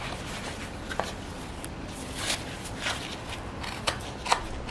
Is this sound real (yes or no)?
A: yes